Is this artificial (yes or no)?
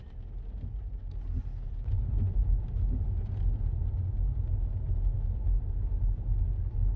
no